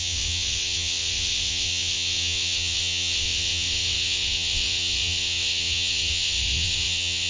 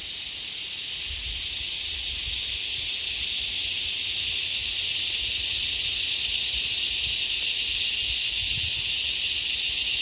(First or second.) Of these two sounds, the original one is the second